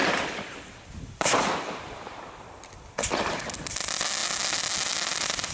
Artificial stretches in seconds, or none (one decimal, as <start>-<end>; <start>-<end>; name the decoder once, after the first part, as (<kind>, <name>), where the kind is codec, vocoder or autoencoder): none